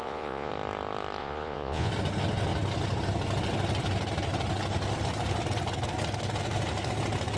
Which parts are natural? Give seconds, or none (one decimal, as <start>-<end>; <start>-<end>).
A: 0.5-1.2; 1.9-7.4